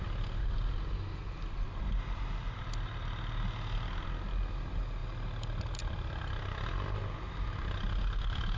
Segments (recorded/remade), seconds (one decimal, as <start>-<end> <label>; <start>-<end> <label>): 0.0-8.6 recorded